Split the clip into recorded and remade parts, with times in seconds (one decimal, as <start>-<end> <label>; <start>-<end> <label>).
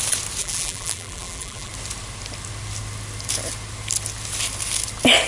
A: 0.0-0.4 recorded; 0.4-1.7 remade; 1.7-5.3 recorded